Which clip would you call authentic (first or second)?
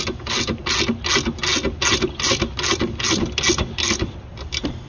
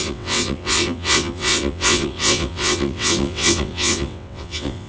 first